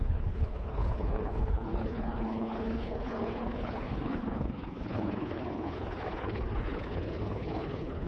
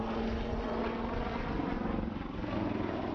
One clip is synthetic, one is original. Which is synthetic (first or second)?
first